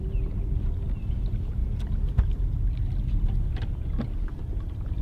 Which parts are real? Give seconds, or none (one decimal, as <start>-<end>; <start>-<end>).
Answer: 1.6-4.0